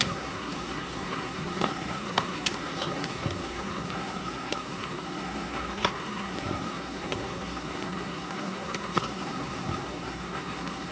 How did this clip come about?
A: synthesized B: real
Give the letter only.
A